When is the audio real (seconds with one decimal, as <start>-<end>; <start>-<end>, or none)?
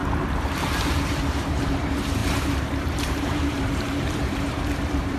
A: none